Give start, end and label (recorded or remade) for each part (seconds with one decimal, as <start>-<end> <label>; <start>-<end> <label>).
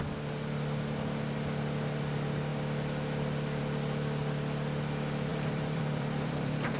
0.0-5.3 recorded; 5.3-6.8 remade